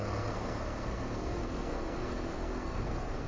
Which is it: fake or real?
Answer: fake